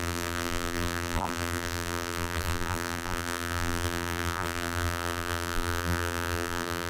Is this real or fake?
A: fake